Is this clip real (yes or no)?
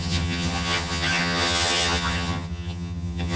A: no